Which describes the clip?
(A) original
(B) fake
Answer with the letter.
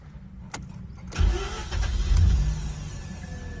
A